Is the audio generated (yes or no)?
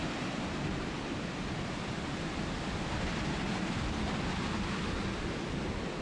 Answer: no